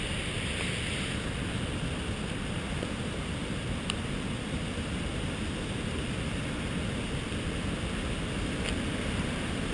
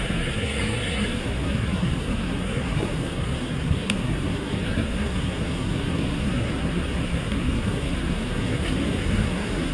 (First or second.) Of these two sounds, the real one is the first